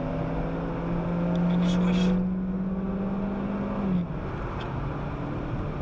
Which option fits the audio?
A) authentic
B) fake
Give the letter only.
A